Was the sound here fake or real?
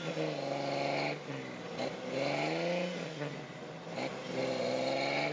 real